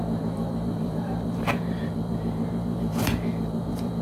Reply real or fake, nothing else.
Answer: fake